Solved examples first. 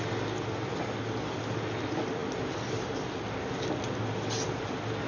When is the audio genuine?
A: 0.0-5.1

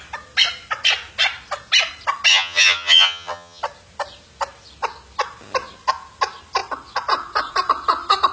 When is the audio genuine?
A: 0.0-2.3; 3.6-8.3

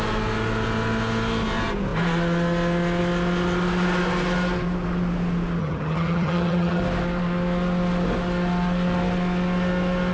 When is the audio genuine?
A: 0.0-5.6; 6.8-10.1